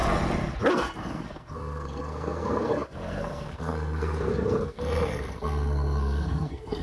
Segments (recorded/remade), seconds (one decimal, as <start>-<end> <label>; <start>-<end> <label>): 0.0-0.7 recorded; 0.7-6.8 remade

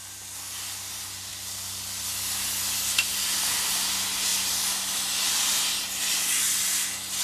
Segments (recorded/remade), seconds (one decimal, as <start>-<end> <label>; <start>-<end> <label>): 0.0-7.2 recorded

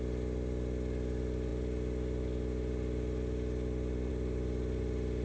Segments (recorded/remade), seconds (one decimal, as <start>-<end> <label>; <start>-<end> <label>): 0.0-5.2 recorded

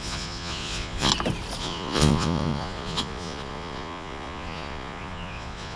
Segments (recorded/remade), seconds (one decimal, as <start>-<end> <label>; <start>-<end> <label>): 0.0-1.1 remade; 1.1-1.6 recorded; 1.6-5.8 remade

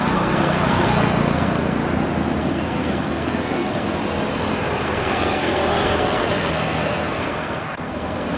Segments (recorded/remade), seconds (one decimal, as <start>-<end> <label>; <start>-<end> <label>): 0.0-1.8 remade; 1.8-2.4 recorded; 2.4-4.0 remade; 4.0-4.8 recorded; 4.8-8.4 remade